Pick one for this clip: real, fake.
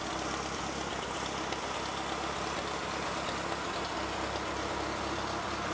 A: real